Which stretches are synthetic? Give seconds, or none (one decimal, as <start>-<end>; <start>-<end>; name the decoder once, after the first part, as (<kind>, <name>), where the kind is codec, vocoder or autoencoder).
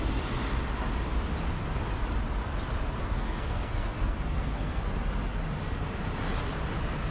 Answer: 3.0-4.9 (codec, SNAC)